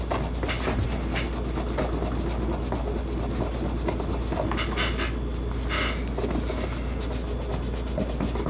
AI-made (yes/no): no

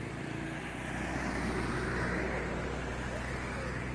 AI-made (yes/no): no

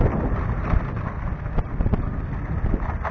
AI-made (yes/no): no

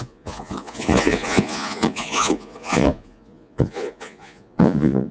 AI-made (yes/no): yes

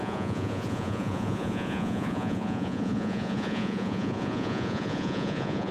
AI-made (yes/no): yes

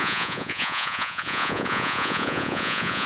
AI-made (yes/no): yes